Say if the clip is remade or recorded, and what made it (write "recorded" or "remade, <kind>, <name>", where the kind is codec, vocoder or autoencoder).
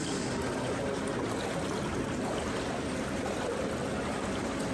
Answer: recorded